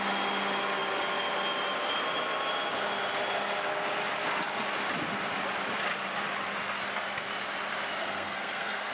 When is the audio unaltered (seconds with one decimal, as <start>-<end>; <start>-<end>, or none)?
0.0-8.0